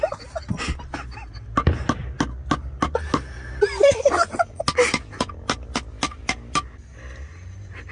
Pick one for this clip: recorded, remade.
recorded